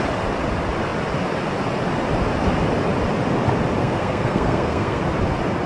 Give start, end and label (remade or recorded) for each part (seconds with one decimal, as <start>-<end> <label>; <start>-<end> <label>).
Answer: 0.0-3.8 recorded; 3.8-5.0 remade; 5.0-5.7 recorded